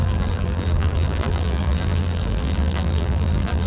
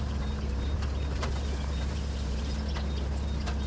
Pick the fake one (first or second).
first